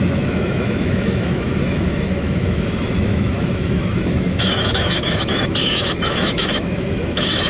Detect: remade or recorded remade